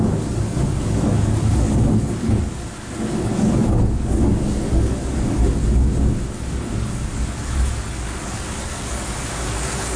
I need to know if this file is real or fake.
fake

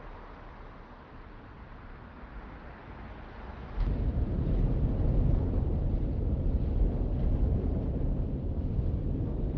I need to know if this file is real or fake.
real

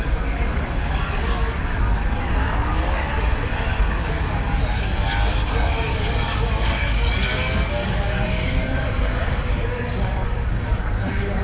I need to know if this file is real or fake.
fake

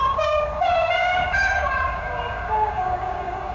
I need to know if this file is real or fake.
fake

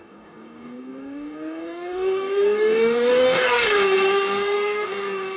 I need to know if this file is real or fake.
fake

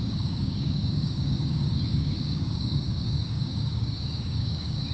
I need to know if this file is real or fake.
fake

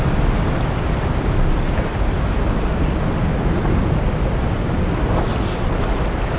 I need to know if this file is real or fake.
real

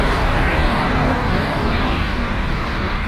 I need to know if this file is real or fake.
fake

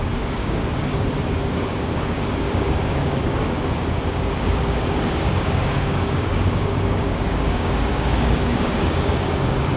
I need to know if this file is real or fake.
fake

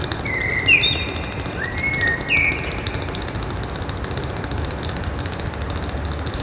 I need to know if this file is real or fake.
real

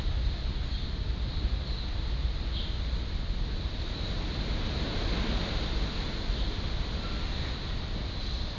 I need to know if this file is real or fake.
real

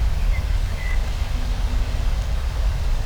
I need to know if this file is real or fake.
fake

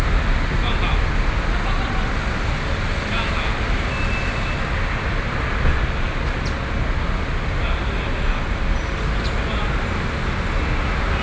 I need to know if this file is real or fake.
real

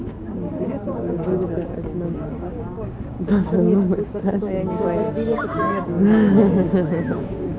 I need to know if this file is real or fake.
fake